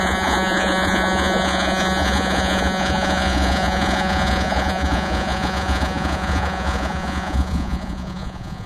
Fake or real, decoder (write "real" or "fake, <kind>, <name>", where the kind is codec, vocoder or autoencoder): fake, vocoder, Vocos